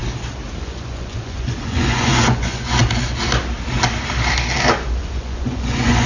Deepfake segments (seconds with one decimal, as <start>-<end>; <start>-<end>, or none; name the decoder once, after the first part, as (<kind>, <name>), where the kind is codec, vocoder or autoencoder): 0.6-2.8 (vocoder, Vocos); 5.0-6.1